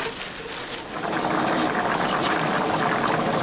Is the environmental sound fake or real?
real